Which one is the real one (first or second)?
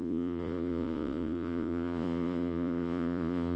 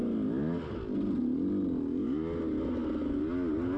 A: second